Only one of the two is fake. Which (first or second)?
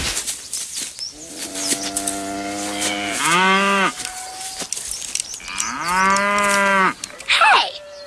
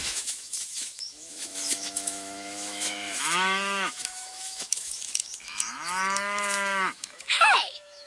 second